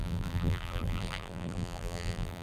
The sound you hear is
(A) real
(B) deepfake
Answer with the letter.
B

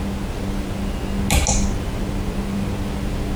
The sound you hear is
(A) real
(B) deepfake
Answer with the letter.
A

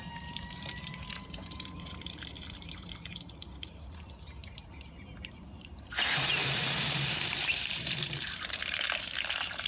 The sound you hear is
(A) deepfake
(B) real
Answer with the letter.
A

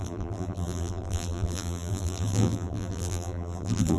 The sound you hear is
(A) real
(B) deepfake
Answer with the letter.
B